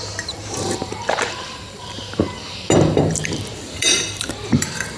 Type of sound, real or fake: fake